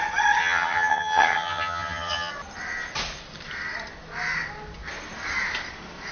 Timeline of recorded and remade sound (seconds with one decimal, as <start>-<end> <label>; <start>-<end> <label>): 0.0-0.4 recorded; 0.4-2.3 remade; 2.3-6.1 recorded